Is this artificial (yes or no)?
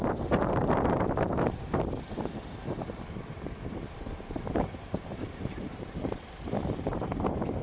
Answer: yes